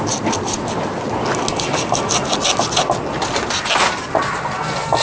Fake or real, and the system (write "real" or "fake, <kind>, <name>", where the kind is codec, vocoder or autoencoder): real